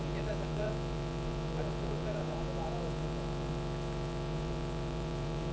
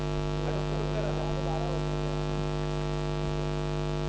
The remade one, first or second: first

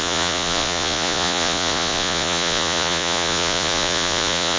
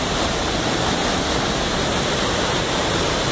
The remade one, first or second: first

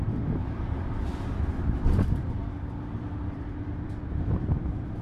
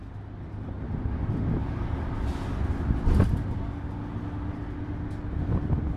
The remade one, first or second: first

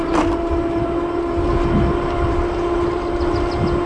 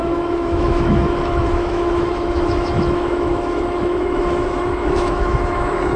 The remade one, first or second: second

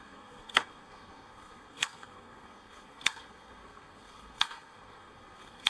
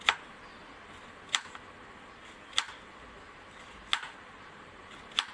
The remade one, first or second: first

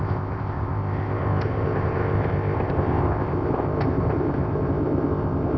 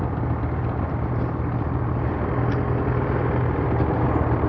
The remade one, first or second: first